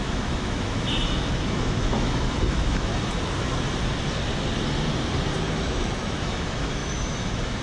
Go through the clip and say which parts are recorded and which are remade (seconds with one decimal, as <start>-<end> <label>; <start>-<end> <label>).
0.0-2.9 remade; 2.9-5.4 recorded; 5.4-7.6 remade